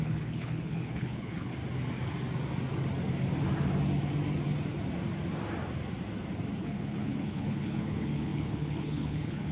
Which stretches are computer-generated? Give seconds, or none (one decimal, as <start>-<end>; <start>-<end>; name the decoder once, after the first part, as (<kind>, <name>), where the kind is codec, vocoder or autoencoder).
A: 0.0-1.6 (codec, HILCodec); 6.6-9.5